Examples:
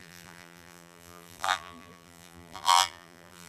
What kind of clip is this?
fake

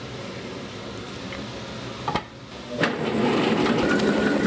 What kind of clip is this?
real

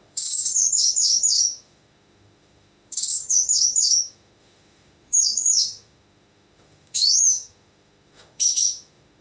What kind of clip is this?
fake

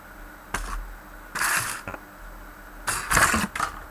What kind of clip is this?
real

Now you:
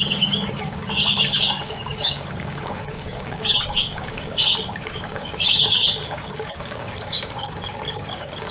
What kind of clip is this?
fake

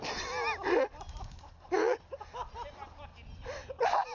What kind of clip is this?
real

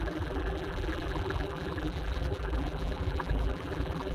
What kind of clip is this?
fake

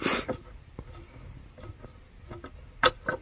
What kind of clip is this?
real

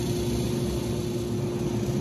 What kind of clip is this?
real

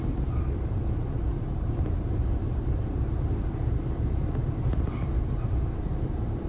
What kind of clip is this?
fake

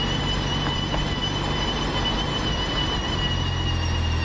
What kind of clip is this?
real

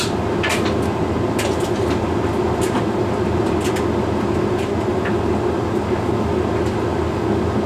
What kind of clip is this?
real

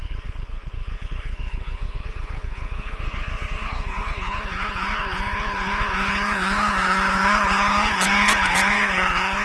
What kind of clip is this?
fake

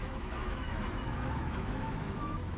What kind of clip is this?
fake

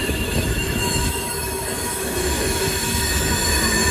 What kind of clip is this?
fake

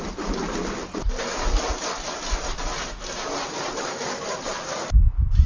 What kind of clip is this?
real